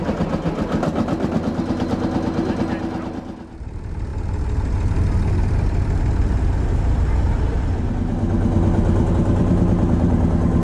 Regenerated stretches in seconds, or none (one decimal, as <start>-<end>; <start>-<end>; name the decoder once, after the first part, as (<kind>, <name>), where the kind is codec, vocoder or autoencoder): none